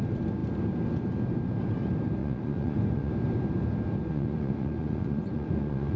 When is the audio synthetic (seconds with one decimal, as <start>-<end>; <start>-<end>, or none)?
2.2-3.1; 4.1-6.0